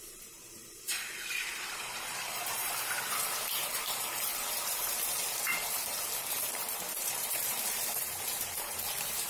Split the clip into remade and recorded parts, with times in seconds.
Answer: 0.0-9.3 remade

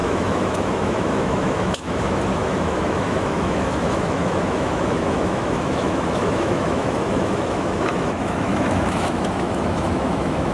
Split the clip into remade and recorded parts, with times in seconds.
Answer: 0.0-10.5 remade